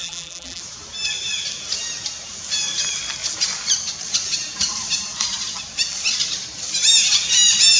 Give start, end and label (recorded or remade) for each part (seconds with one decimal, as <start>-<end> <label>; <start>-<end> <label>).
0.0-0.6 remade; 0.6-7.8 recorded

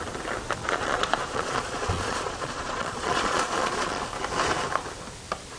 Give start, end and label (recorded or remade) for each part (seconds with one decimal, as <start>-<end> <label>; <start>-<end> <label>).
0.0-0.6 recorded; 0.6-4.0 remade; 4.0-5.6 recorded